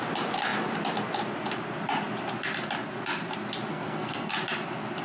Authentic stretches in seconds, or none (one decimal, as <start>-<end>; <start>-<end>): 0.0-3.7; 4.3-5.0